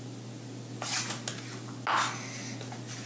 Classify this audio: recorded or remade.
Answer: recorded